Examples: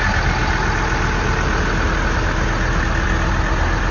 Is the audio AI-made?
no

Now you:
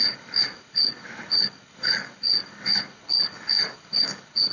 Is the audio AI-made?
yes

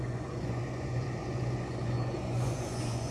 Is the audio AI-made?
yes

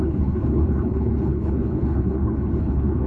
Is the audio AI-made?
yes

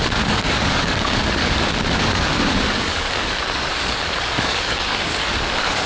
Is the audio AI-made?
yes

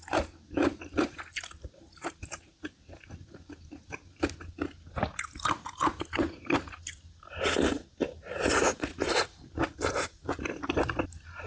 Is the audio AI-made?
no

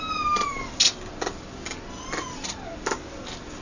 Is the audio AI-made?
no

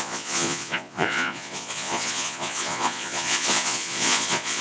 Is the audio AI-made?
yes